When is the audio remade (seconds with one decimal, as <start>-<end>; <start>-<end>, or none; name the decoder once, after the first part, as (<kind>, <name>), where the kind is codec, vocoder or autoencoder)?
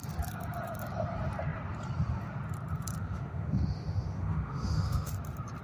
3.0-5.1 (autoencoder, DAC-VAE)